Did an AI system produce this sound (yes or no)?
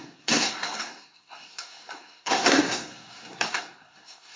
yes